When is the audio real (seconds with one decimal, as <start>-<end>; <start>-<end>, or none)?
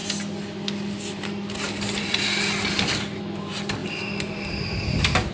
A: 0.0-5.3